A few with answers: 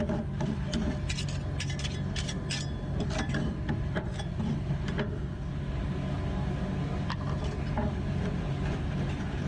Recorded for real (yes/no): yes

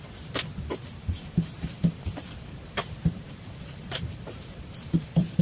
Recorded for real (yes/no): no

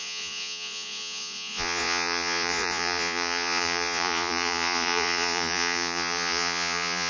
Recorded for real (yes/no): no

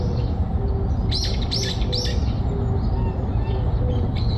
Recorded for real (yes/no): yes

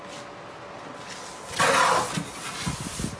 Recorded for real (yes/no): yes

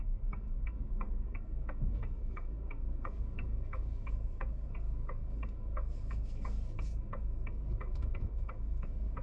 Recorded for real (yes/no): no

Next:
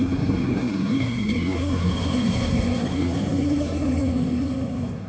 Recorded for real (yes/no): no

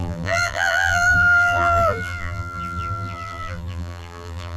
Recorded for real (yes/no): no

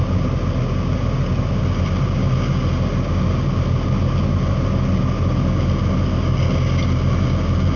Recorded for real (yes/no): yes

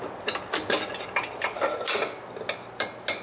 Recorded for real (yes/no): yes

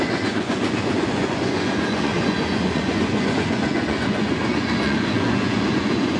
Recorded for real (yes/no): no